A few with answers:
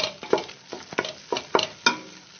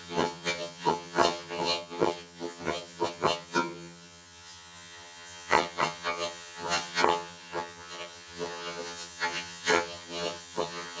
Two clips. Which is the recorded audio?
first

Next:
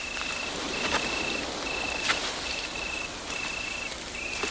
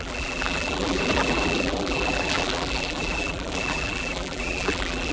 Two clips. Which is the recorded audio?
first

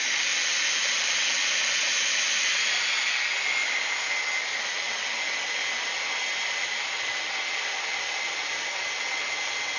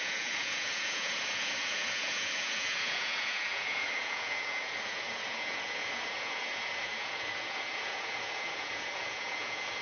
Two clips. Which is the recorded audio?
first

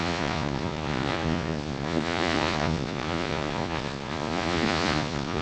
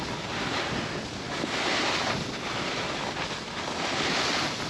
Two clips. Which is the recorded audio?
second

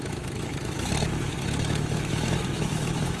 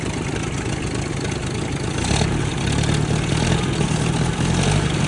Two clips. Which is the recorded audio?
second